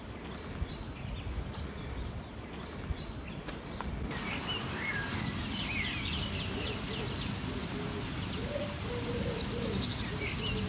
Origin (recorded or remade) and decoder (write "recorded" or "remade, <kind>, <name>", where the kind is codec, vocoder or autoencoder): recorded